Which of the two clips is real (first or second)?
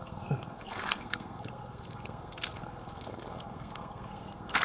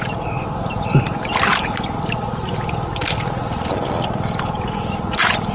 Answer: second